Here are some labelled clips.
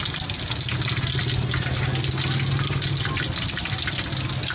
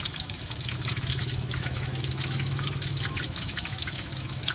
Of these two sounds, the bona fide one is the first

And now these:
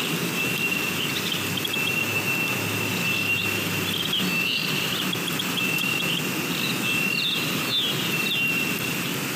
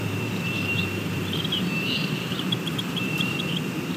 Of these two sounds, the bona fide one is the first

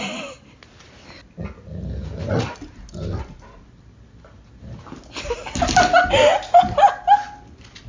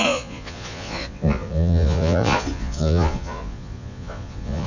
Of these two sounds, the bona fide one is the first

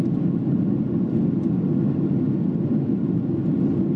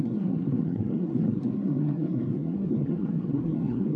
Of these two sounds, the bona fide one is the first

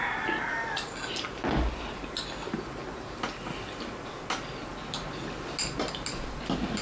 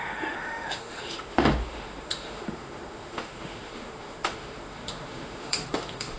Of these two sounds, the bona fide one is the first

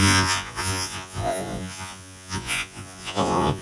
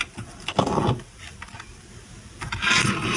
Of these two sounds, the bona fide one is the second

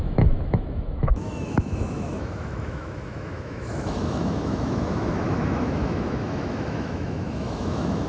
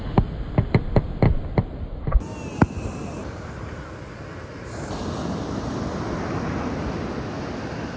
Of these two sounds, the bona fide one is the second